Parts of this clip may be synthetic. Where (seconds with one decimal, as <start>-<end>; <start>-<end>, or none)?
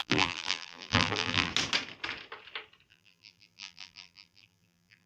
0.0-1.5; 2.9-5.1